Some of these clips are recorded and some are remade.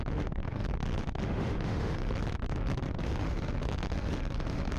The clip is remade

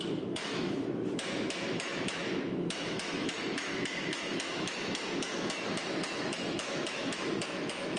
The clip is remade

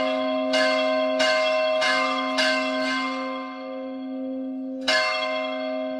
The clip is remade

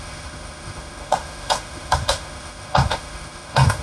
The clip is remade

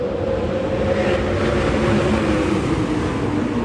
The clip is recorded